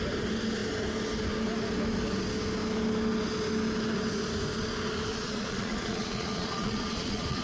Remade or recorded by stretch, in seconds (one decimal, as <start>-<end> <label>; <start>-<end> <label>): 0.0-5.1 recorded; 5.1-7.4 remade